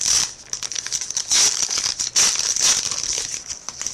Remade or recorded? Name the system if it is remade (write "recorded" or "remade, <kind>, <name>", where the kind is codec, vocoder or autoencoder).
recorded